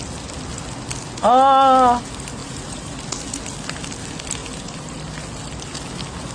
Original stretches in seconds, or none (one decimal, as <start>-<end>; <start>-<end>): 0.0-2.4; 2.9-4.4; 5.0-6.3